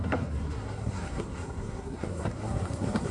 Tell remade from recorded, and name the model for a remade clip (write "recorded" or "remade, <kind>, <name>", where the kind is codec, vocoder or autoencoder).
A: remade, codec, SNAC